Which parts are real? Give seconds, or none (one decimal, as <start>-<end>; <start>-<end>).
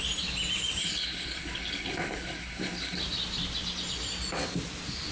0.0-0.8; 3.0-5.1